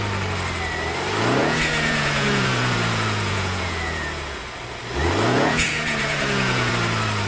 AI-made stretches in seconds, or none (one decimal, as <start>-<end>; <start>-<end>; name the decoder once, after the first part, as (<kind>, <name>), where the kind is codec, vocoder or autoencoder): 1.4-4.4 (vocoder, Vocos); 5.3-6.7

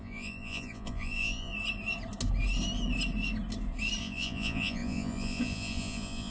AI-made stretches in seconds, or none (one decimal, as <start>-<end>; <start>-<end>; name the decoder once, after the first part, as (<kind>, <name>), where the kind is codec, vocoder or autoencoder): 0.0-1.5 (vocoder, Vocos); 4.0-6.3

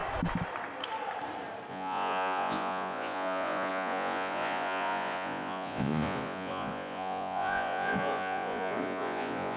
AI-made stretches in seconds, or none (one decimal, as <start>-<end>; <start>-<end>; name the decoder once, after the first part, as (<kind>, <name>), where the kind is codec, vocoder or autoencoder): 1.7-9.6 (vocoder, Vocos)

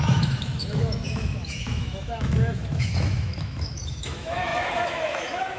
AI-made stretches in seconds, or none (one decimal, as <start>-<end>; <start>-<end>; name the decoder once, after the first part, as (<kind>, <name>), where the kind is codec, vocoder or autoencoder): 0.0-5.6 (autoencoder, DAC-VAE)